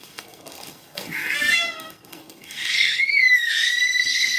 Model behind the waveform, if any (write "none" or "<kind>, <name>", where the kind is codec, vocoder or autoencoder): codec, SNAC